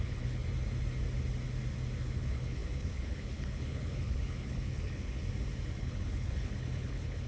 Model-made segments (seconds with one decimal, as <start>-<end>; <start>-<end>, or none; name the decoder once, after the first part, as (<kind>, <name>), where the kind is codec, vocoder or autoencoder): 0.0-0.4 (codec, HILCodec); 2.0-5.2; 5.8-7.3